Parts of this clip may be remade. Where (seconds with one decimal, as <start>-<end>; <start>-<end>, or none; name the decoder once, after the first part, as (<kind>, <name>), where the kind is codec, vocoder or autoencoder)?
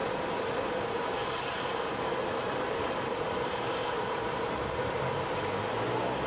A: 3.8-5.0 (vocoder, BigVGAN v2)